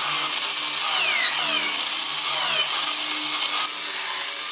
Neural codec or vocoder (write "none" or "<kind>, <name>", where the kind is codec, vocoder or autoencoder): none